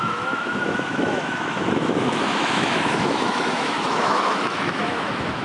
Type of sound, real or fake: fake